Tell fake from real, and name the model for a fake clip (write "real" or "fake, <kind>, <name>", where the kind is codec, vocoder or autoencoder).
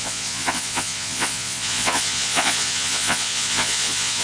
fake, vocoder, Vocos